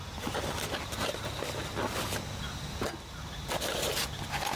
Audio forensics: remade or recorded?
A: recorded